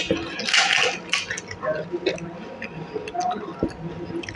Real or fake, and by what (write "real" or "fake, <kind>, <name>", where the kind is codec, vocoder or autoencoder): real